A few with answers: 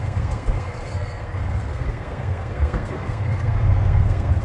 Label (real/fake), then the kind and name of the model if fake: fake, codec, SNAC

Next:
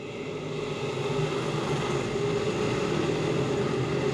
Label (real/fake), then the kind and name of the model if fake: real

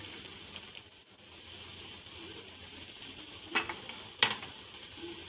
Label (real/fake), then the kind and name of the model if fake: real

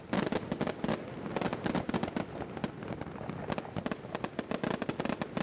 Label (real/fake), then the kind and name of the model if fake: real